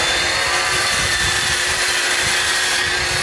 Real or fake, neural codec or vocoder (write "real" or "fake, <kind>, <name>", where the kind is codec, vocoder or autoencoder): fake, vocoder, BigVGAN v2